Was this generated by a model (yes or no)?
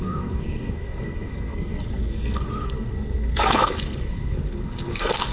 yes